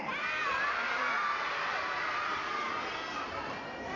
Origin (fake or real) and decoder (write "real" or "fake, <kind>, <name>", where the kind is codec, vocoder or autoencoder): real